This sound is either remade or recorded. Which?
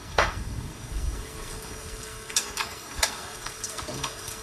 remade